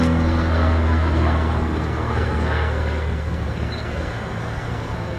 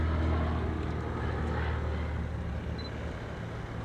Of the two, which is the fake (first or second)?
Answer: first